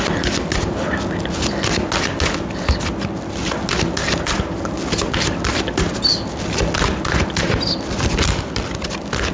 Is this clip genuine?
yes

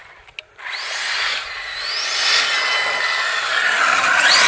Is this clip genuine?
yes